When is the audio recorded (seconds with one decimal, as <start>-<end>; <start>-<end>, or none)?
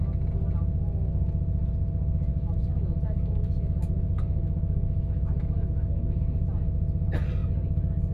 0.0-2.3; 6.2-8.1